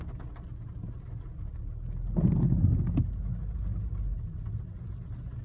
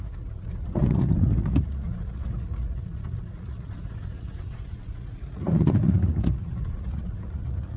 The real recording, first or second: first